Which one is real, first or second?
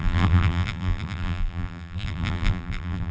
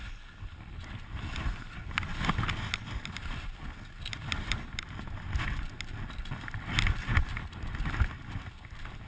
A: second